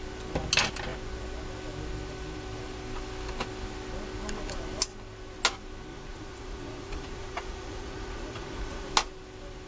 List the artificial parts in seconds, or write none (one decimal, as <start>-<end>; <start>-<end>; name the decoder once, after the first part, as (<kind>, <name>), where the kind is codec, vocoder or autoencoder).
5.9-8.9 (vocoder, Vocos)